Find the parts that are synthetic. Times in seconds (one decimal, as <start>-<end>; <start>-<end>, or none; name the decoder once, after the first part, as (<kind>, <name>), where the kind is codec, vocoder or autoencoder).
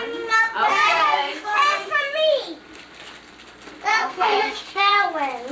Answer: 0.7-1.9 (codec, SNAC); 3.9-4.9